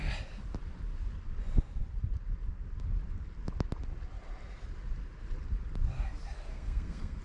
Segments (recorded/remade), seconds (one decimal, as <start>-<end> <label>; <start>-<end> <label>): 0.0-6.5 recorded; 6.5-7.2 remade